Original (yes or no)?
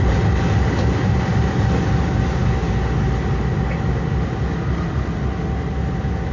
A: yes